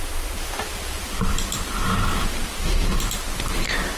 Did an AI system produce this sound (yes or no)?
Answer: no